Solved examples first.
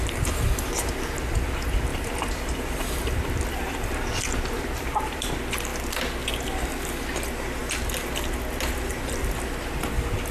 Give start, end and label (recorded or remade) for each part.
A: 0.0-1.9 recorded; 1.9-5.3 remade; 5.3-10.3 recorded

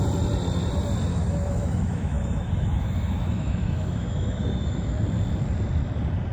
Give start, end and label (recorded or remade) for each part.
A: 0.0-1.1 recorded; 1.1-4.9 remade; 4.9-6.3 recorded